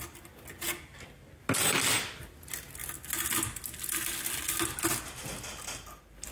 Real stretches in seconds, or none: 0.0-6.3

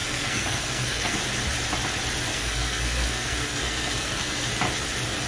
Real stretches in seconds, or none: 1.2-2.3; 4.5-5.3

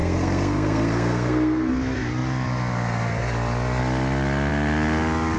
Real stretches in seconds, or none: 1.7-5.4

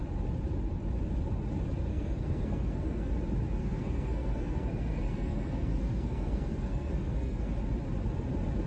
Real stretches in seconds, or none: 0.0-1.9; 3.1-3.6; 7.5-8.7

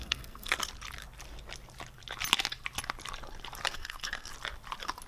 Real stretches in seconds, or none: 0.6-3.7; 4.3-5.1

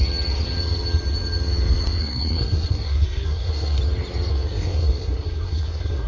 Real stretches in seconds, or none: 0.0-2.0; 3.8-4.3